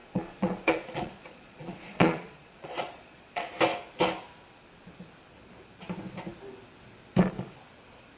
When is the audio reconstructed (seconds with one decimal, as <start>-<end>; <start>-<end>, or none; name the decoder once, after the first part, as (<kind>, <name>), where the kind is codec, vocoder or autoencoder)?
0.0-3.5 (vocoder, Vocos)